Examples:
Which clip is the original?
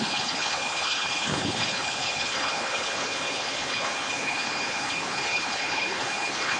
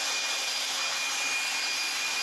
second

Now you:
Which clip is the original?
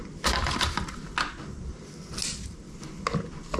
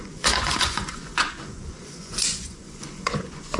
first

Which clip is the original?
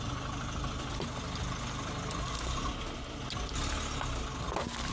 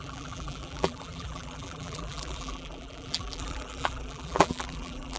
first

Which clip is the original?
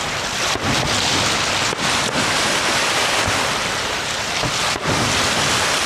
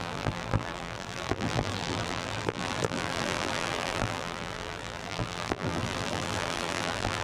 first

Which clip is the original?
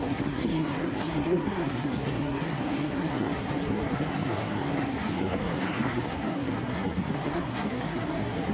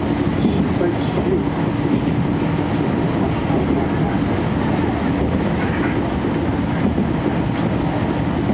second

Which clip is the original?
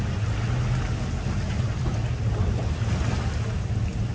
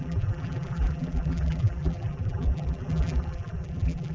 first